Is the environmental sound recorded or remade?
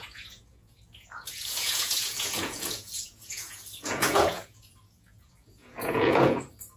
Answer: remade